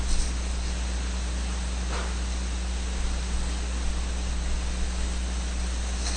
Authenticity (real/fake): real